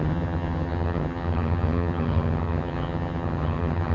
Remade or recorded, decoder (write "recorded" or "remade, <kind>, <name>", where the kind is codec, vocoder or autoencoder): remade, vocoder, HiFi-GAN